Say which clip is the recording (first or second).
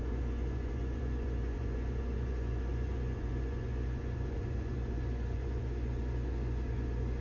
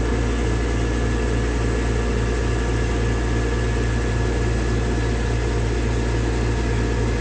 second